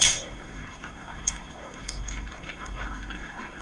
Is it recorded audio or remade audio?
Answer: remade